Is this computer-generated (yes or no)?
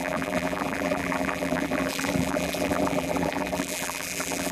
yes